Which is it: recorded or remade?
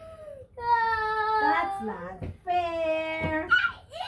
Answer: recorded